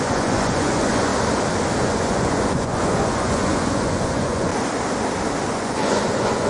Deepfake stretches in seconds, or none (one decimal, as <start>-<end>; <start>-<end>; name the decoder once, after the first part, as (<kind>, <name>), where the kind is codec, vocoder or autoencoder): 0.0-1.1 (vocoder, Vocos); 1.8-4.5; 5.5-6.5